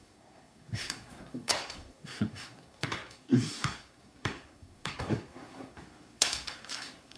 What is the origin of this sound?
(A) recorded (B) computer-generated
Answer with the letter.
B